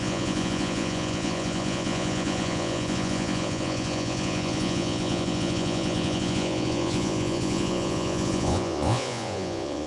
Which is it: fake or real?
fake